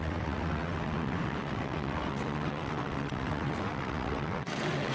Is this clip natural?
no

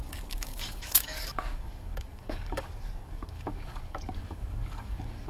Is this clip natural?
no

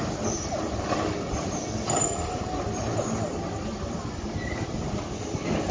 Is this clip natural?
yes